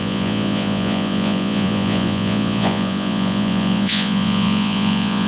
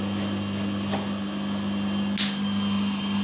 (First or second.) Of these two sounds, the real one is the second